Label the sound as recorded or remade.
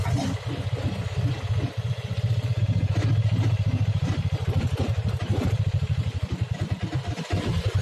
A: recorded